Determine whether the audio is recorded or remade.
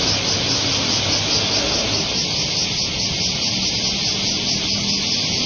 recorded